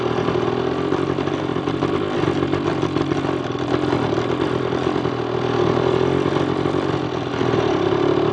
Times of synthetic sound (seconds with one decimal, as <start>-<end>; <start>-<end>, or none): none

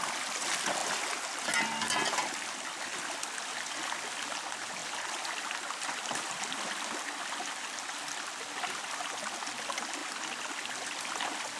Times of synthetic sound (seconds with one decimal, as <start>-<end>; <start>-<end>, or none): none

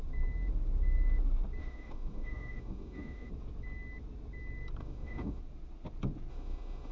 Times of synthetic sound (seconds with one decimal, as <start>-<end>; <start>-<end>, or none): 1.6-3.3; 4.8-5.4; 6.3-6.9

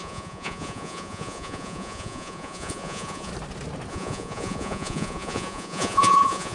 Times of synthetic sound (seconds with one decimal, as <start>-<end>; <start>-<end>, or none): 0.0-3.3; 3.9-6.5

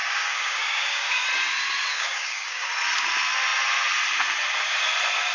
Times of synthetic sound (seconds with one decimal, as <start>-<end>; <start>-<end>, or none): 0.0-1.2; 1.9-2.7

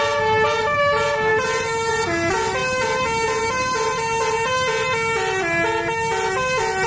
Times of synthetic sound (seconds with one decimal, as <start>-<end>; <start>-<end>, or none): none

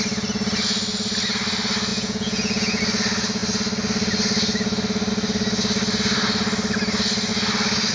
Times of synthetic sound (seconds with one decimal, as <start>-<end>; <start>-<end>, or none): 1.9-2.8

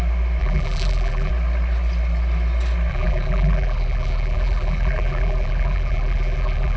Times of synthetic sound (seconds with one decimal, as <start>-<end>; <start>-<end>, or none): 0.4-1.3; 2.9-6.8